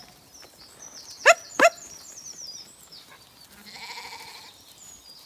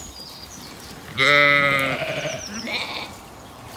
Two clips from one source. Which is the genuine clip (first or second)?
first